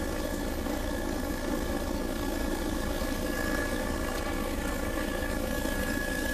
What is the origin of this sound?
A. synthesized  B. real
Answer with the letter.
A